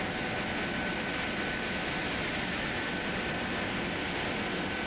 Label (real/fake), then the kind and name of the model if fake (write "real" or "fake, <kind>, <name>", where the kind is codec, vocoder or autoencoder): real